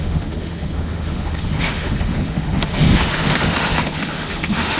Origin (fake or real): fake